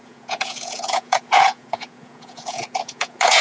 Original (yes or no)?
no